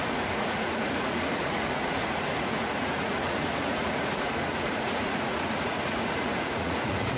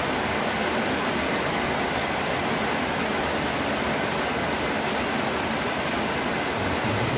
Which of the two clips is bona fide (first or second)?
second